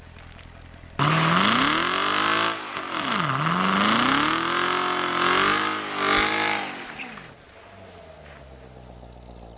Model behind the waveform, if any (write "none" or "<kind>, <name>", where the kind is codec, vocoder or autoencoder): none